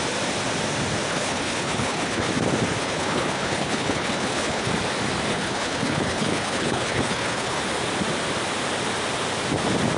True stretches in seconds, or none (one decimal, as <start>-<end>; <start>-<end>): 0.0-1.1; 2.3-2.8; 4.7-5.3; 7.6-10.0